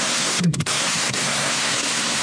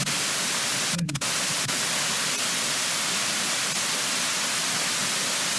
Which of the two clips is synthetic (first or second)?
first